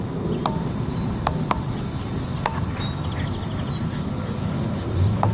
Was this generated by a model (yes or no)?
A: no